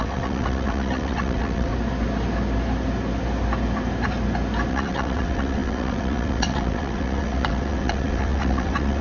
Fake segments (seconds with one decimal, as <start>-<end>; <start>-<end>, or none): 0.0-1.7; 4.7-9.0